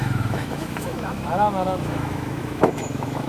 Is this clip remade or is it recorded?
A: remade